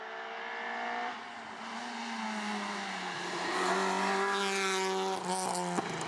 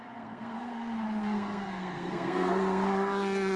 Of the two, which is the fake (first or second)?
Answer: second